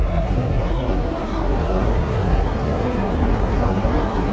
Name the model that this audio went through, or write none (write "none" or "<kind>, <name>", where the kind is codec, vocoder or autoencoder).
codec, SNAC